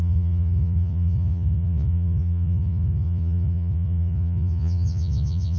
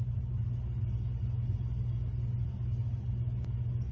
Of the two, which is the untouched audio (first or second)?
second